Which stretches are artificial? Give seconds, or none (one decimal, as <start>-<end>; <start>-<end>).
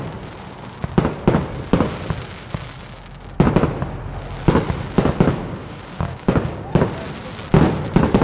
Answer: 5.4-6.8